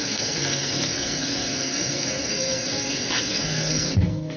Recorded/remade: remade